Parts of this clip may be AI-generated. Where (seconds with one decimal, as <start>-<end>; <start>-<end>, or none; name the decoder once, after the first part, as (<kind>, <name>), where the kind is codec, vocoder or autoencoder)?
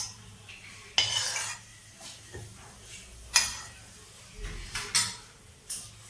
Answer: 1.7-4.3 (vocoder, BigVGAN v2)